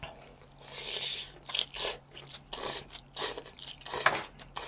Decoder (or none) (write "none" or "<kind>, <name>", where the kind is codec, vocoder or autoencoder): none